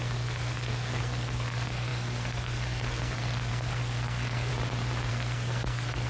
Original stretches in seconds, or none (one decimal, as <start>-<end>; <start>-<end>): 4.5-5.1